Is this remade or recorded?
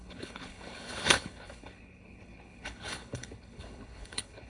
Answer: remade